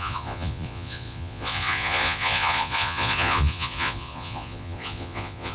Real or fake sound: fake